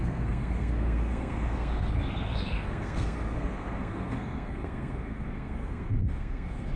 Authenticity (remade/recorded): remade